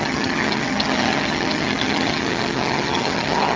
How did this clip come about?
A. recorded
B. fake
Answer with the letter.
B